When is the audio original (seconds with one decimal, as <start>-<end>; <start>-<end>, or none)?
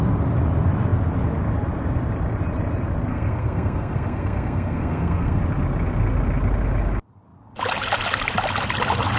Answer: 0.0-3.1; 5.4-9.2